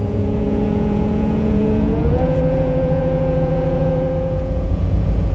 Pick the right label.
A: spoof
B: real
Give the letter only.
A